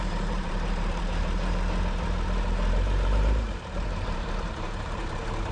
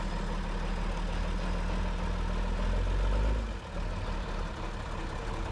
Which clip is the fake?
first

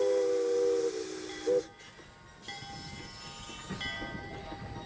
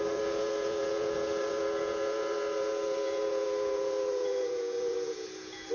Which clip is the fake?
second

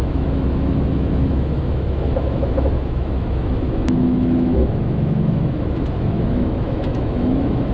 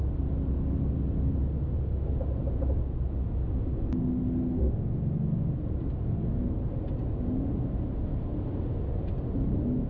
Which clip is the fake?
first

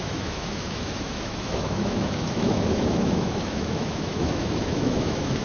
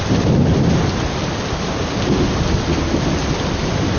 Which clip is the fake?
first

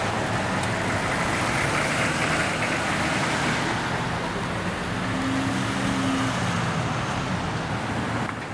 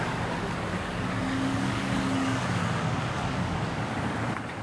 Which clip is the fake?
second